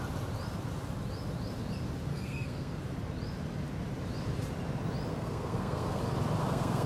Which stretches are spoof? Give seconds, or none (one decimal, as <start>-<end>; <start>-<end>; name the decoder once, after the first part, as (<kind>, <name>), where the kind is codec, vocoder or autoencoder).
2.1-2.8 (codec, SNAC); 5.1-6.0; 6.4-6.9